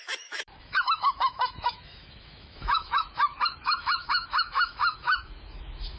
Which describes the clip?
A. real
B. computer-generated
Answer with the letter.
B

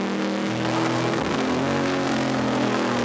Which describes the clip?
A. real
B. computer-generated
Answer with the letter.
B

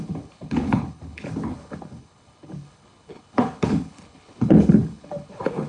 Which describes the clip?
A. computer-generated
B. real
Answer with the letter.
A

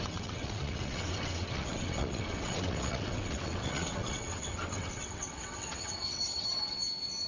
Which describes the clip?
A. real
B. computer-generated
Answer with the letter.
B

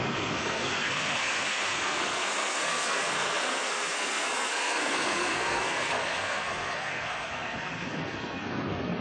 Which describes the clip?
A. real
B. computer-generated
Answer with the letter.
B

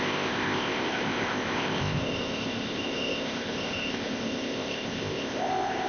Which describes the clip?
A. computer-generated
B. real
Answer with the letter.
A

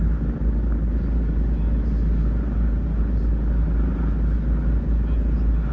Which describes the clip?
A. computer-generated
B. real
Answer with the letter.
B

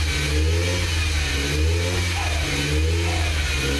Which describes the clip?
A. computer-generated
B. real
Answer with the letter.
B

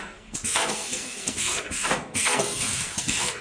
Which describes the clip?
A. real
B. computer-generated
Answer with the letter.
B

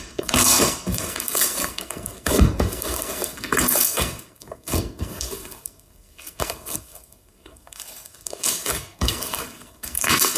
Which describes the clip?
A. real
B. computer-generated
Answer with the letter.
B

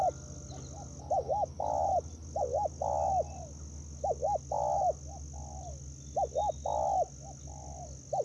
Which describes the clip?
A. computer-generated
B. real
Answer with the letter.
B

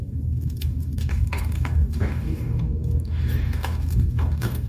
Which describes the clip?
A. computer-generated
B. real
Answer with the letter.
A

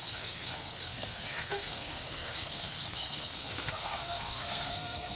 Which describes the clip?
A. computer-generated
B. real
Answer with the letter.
A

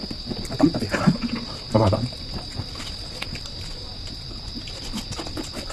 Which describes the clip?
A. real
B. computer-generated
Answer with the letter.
A